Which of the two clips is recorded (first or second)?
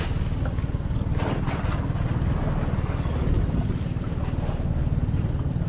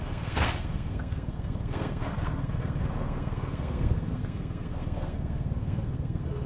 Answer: first